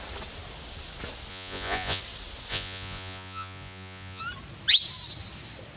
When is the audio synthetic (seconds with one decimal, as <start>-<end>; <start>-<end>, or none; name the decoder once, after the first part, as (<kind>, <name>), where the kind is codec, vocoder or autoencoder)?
1.3-2.0 (vocoder, Vocos); 2.5-4.2